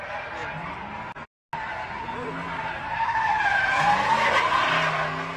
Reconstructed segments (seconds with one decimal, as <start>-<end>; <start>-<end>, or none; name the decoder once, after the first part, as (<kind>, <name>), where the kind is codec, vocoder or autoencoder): none